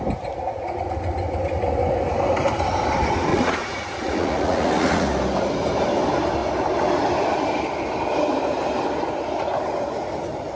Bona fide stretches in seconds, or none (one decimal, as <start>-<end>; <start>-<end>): 0.0-3.3; 5.1-10.6